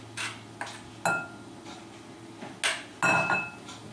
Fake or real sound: real